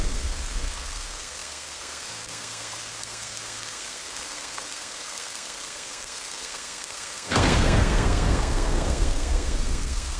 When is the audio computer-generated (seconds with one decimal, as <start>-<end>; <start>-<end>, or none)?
0.0-10.2